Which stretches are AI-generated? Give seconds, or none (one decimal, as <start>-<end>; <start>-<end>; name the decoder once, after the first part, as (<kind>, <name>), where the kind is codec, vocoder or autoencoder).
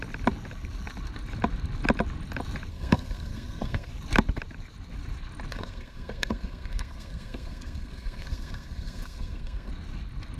2.7-3.9 (codec, SNAC); 5.5-9.7